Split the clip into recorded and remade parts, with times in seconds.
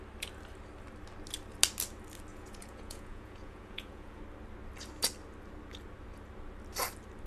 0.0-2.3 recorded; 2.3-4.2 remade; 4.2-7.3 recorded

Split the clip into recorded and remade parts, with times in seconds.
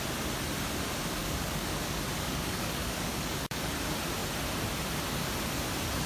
0.0-1.2 recorded; 1.2-3.6 remade; 3.6-6.1 recorded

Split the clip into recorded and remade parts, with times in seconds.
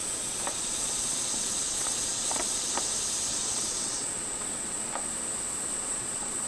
0.0-2.7 remade; 2.7-3.3 recorded; 3.3-5.0 remade; 5.0-5.7 recorded; 5.7-6.5 remade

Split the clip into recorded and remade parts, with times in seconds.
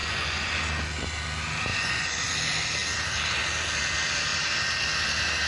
0.0-0.6 remade; 0.6-1.7 recorded; 1.7-2.3 remade; 2.3-5.5 recorded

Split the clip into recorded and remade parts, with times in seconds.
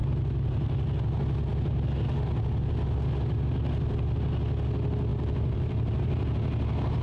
0.0-0.9 remade; 0.9-5.1 recorded; 5.1-6.2 remade; 6.2-7.0 recorded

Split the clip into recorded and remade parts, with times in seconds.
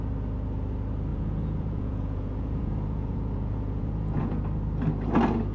0.0-1.1 recorded; 1.1-4.4 remade; 4.4-5.5 recorded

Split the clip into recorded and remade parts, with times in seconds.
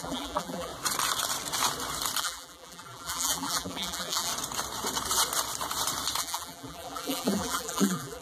0.0-0.7 remade; 0.7-2.2 recorded; 2.2-4.3 remade; 4.3-6.2 recorded; 6.2-8.2 remade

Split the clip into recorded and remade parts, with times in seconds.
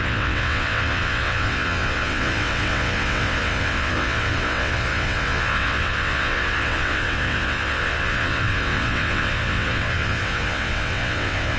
0.0-11.6 remade